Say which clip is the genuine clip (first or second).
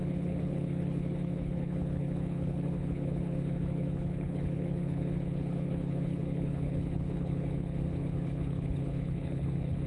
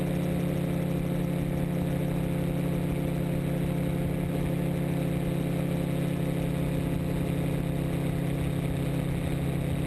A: second